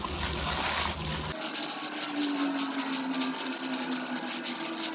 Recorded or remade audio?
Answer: recorded